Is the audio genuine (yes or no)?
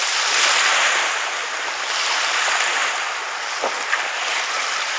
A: yes